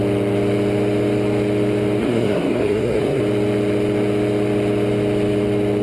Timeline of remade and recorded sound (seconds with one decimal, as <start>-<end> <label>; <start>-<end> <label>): 0.0-2.0 recorded; 2.0-3.2 remade; 3.2-5.8 recorded